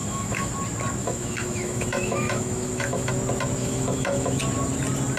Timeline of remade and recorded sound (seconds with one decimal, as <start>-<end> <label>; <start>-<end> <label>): 0.0-0.5 remade; 0.5-1.0 recorded; 1.0-3.1 remade; 3.1-3.6 recorded; 3.6-4.4 remade; 4.4-5.2 recorded

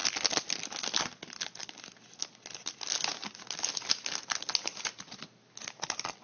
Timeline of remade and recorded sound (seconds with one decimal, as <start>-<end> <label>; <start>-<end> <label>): 0.0-6.2 recorded

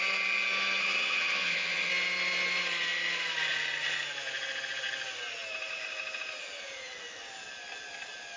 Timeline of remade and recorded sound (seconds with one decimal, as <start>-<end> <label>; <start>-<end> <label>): 0.0-0.8 recorded; 0.8-1.9 remade; 1.9-8.4 recorded

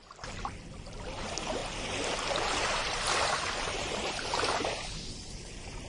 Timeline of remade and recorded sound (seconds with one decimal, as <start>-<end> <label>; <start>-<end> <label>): 0.0-1.2 recorded; 1.2-1.6 remade; 1.6-2.7 recorded; 2.7-5.9 remade

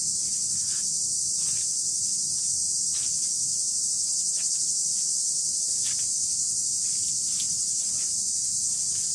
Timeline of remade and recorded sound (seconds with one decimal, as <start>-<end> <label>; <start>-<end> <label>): 0.0-9.1 recorded